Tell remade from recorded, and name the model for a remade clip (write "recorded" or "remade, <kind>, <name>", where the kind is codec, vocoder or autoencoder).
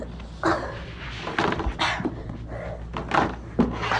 recorded